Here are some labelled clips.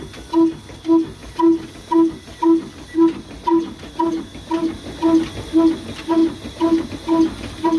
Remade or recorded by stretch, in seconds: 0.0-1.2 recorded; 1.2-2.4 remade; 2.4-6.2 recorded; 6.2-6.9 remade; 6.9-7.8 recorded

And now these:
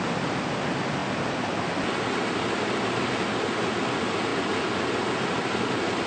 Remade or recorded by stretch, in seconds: 0.0-6.1 recorded

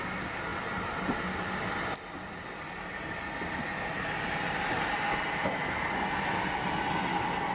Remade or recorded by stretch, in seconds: 0.0-7.5 recorded